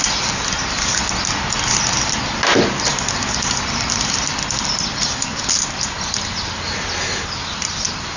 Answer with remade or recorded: recorded